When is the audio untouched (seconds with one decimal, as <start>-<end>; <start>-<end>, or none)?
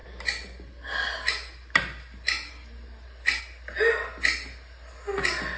0.0-5.6